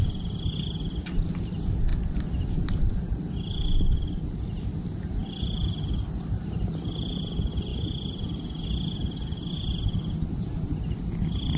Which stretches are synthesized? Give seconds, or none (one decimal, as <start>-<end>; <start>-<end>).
5.2-6.6